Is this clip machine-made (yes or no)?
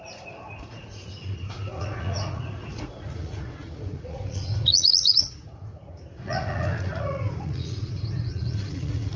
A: yes